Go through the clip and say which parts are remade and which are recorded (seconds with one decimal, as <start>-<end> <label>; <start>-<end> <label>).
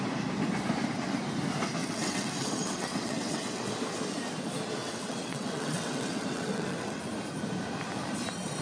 0.0-1.8 recorded; 1.8-3.7 remade; 3.7-4.8 recorded; 4.8-7.0 remade; 7.0-8.6 recorded